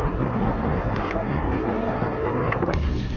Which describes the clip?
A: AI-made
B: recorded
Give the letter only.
A